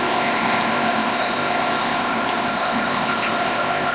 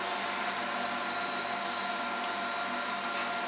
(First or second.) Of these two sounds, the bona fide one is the second